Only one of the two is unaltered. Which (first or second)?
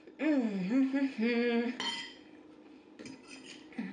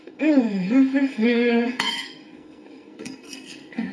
first